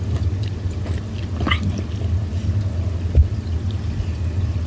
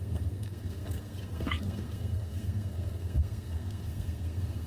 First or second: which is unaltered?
first